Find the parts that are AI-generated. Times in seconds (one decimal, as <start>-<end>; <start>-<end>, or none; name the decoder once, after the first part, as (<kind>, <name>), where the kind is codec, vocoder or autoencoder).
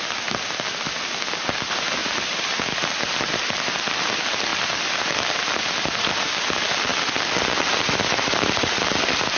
none